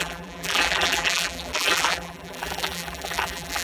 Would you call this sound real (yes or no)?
no